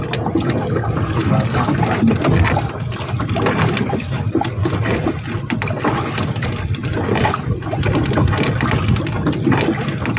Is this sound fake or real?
real